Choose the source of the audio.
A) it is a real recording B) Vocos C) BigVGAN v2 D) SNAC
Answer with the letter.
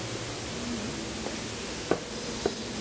A